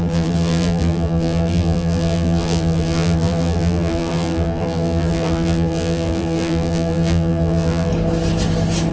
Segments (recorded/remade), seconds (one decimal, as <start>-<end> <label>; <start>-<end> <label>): 0.0-7.9 remade; 7.9-8.9 recorded